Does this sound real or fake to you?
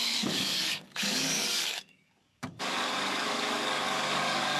fake